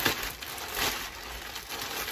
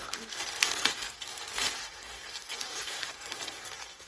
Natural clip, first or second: first